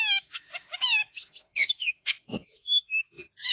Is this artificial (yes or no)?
yes